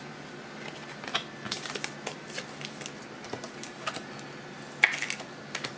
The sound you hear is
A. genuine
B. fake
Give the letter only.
A